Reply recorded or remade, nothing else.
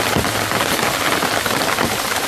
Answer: recorded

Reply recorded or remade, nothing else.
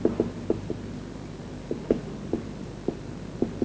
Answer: recorded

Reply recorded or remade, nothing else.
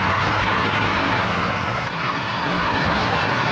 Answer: remade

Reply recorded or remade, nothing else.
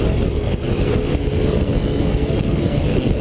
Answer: remade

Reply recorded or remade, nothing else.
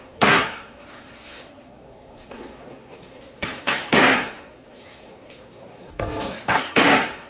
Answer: remade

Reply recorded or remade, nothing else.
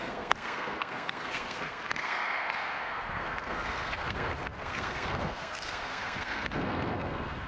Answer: remade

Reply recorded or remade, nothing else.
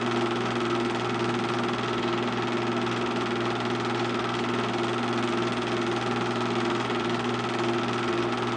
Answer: recorded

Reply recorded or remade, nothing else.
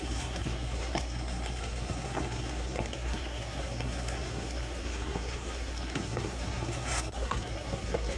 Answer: remade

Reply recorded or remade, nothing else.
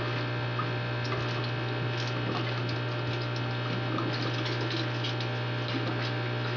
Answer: recorded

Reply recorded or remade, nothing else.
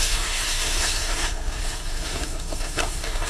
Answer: remade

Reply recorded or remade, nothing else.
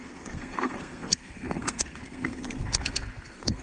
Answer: remade